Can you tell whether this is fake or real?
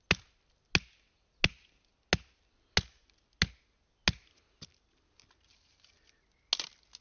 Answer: real